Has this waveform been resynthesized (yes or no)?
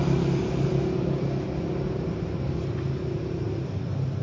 no